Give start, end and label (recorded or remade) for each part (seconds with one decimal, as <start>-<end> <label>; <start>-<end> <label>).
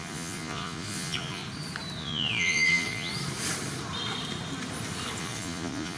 0.0-1.4 remade; 1.4-2.0 recorded; 2.0-3.1 remade; 3.1-5.2 recorded; 5.2-6.0 remade